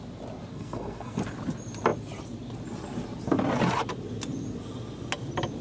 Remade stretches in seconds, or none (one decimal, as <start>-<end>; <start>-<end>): 0.5-1.2